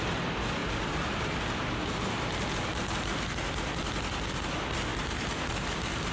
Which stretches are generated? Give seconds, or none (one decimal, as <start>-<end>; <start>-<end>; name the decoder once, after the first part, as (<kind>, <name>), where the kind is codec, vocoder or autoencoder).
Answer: 0.6-1.2 (vocoder, BigVGAN v2)